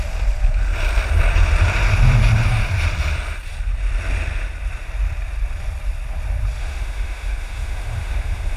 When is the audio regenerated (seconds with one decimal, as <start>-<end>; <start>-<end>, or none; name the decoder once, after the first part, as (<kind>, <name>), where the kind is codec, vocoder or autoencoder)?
6.6-8.6 (autoencoder, DAC-VAE)